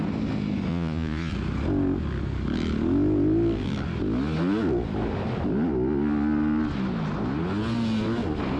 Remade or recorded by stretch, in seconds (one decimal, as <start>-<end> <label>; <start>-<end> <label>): 0.0-0.7 recorded; 0.7-1.3 remade; 1.3-8.6 recorded